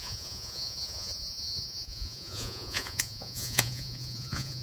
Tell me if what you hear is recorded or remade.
remade